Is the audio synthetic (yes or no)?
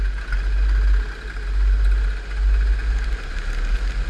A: no